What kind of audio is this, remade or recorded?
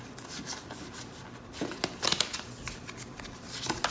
recorded